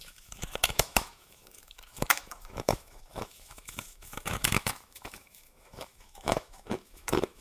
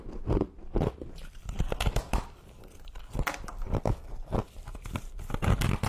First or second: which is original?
second